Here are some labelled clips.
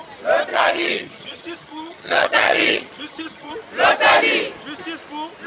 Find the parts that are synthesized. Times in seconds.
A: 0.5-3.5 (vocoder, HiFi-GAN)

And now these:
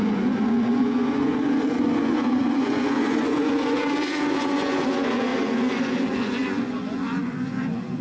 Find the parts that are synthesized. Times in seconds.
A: 0.0-8.0 (vocoder, Vocos)

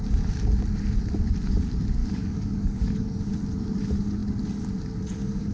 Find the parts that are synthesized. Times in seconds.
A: 2.0-3.3 (codec, DAC)

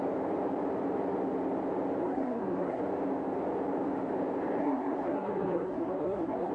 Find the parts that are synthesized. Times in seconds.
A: 2.0-2.8 (codec, SNAC); 4.6-6.5

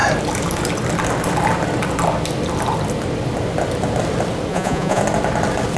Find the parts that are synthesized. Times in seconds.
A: 4.5-5.0 (vocoder, Vocos)

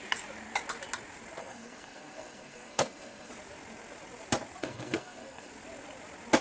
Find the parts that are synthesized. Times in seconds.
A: 1.4-3.3 (codec, SNAC); 4.6-5.5

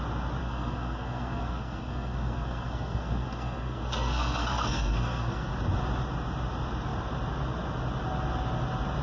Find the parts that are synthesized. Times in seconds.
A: 0.4-5.5 (codec, SNAC)